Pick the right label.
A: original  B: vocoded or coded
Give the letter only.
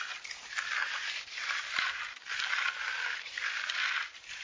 A